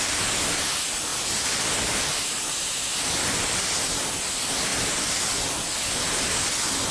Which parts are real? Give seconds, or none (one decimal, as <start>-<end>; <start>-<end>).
0.0-1.1; 2.0-2.9; 3.9-4.7; 5.8-6.9